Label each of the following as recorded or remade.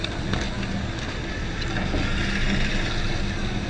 recorded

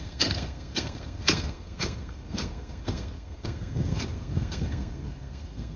remade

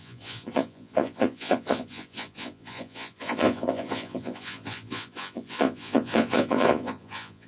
remade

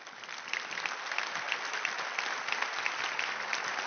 recorded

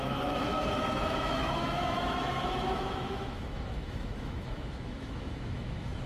remade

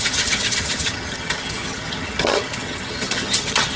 remade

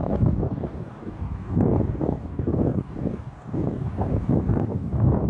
remade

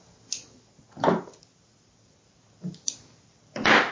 recorded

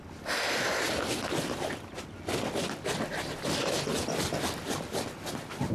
recorded